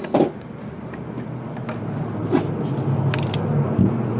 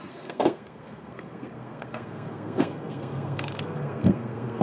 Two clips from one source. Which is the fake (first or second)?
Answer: second